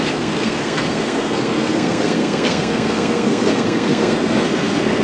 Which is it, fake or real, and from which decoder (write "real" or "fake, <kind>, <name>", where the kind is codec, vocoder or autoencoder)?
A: fake, codec, SNAC